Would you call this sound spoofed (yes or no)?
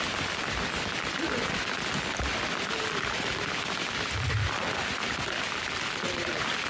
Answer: no